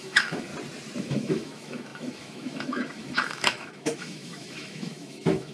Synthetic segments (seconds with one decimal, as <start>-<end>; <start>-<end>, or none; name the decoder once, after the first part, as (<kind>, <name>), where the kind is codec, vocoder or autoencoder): 0.0-0.5 (autoencoder, DAC-VAE); 1.0-5.5